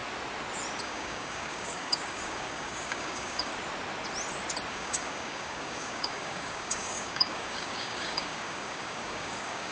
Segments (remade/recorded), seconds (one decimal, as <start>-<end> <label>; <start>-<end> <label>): 0.0-0.8 recorded; 0.8-3.5 remade; 3.5-4.7 recorded; 4.7-9.7 remade